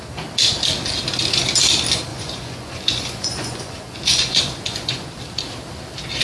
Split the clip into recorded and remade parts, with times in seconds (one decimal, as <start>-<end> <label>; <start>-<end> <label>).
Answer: 0.0-2.1 recorded; 2.1-5.2 remade; 5.2-6.2 recorded